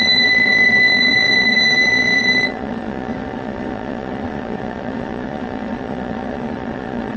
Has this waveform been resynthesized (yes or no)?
yes